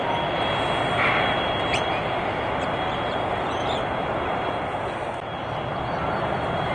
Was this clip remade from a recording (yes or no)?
no